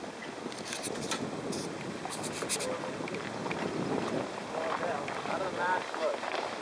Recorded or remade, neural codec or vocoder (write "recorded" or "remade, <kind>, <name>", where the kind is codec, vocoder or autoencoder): recorded